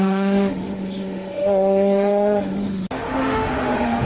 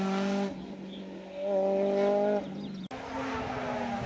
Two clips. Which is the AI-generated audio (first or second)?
first